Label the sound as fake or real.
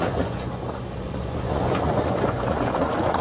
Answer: fake